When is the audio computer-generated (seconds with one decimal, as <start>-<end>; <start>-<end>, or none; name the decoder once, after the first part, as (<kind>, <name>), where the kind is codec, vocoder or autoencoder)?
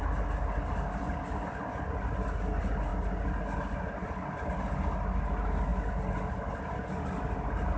none